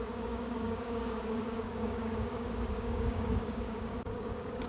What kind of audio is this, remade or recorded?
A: remade